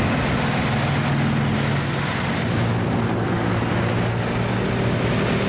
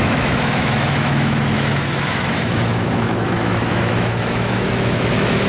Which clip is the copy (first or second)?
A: second